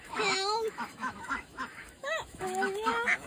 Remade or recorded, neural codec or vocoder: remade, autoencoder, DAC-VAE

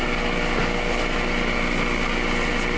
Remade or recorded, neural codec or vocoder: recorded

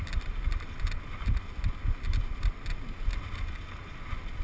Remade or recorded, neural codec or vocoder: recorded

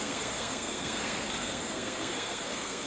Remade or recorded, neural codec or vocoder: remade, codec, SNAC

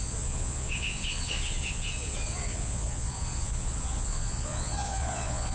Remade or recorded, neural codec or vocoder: remade, vocoder, Vocos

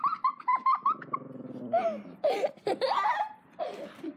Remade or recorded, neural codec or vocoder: remade, vocoder, BigVGAN v2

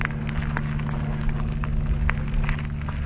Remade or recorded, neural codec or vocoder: recorded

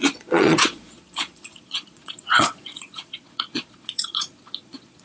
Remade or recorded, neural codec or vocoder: remade, vocoder, Vocos